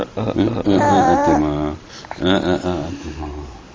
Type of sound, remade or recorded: remade